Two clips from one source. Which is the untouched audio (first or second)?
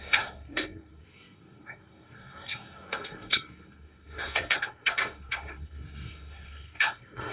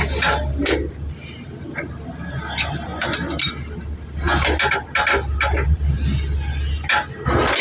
second